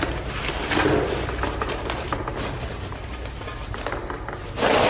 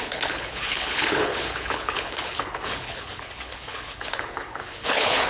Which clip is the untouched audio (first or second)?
first